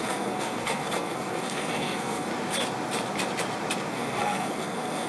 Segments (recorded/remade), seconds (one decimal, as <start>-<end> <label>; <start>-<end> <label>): 0.0-2.3 remade; 2.3-3.9 recorded; 3.9-5.1 remade